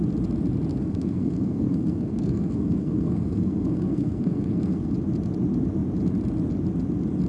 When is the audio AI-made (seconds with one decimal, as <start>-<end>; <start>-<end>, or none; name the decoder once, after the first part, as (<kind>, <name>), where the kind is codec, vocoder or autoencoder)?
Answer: 0.7-4.9 (codec, SNAC)